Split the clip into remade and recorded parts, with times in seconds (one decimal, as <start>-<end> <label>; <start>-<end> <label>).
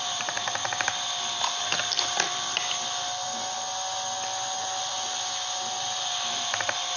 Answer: 0.0-0.6 remade; 0.6-4.8 recorded; 4.8-7.0 remade